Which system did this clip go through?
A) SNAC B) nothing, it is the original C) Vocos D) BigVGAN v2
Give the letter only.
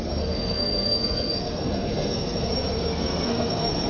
A